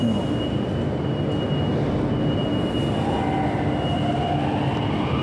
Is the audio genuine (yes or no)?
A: yes